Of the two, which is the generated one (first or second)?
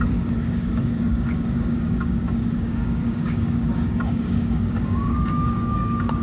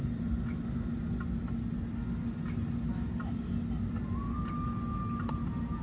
first